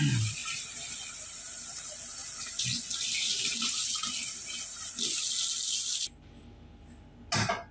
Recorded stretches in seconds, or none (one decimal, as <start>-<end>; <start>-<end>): 0.0-7.7